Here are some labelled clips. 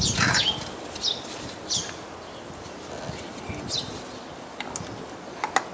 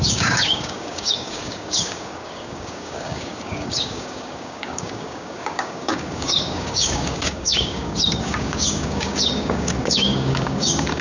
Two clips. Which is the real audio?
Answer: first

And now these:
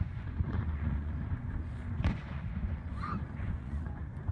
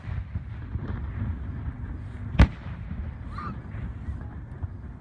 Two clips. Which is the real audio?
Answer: second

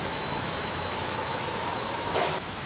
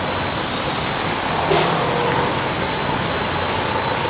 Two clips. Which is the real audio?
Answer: second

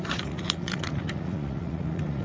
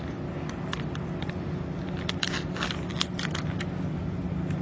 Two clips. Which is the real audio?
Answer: second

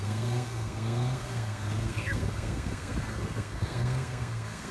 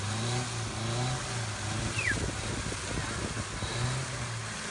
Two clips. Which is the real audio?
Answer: second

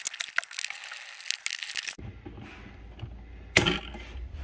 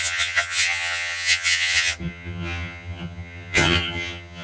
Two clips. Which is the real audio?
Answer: first